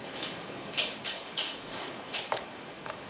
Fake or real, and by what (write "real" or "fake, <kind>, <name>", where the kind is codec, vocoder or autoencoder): fake, codec, DAC